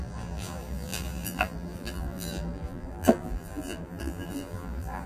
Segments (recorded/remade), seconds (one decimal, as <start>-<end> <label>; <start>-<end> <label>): 0.0-5.1 remade